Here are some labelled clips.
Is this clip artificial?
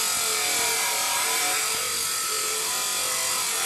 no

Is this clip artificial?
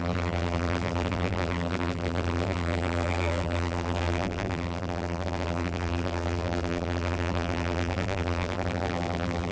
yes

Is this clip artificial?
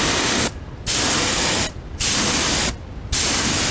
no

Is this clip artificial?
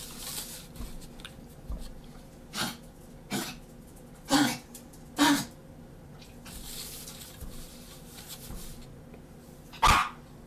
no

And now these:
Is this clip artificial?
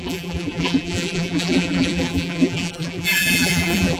yes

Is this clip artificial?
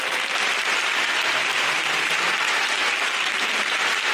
yes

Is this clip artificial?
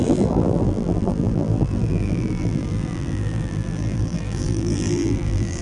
yes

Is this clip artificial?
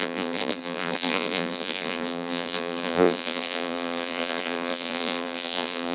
yes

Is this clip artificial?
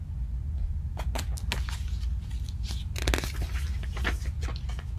no